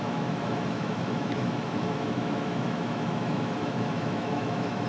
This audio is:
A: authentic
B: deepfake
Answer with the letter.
B